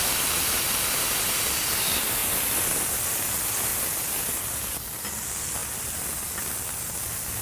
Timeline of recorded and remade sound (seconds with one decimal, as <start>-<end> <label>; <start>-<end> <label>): 0.0-7.4 recorded